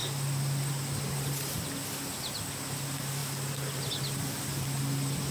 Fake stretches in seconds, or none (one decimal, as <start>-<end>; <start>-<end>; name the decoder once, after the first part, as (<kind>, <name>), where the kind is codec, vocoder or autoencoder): none